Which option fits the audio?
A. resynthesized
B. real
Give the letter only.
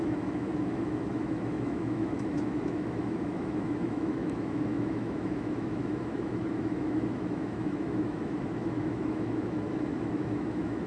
A